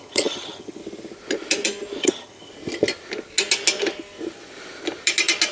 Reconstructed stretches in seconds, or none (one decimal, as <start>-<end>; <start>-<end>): 0.0-0.8; 2.0-2.5